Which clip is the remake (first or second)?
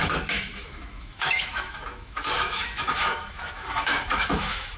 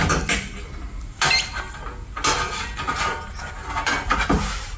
first